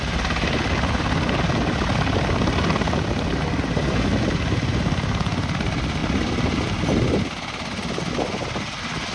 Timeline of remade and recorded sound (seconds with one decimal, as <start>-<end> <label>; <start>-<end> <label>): 0.0-9.1 recorded